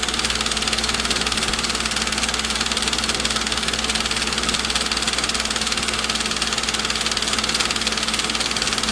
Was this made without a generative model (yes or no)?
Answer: yes